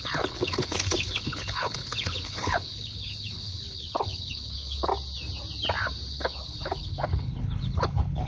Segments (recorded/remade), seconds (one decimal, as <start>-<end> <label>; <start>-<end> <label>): 0.0-4.9 remade; 4.9-6.1 recorded; 6.1-8.3 remade